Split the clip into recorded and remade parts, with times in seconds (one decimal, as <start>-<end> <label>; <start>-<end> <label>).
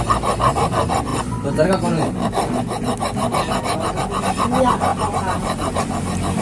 0.0-6.4 recorded